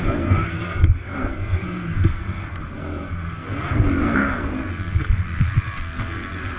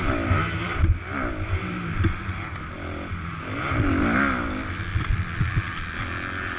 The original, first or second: second